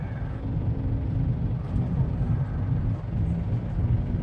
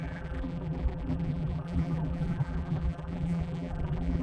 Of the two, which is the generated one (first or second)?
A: second